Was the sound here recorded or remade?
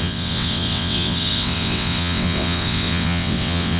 remade